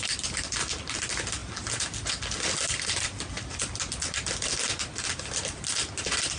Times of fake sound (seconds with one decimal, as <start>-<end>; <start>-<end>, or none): 0.0-1.4; 5.2-6.4